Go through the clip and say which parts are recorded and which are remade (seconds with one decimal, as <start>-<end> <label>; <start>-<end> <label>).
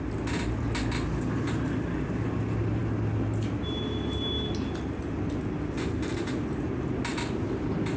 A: 0.0-8.0 recorded